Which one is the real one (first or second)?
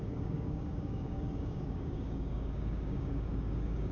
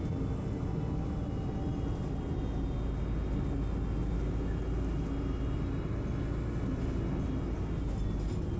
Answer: second